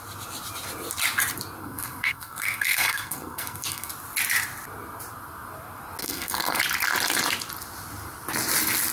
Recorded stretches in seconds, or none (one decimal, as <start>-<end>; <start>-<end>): 0.0-1.6; 3.9-6.0; 6.6-8.9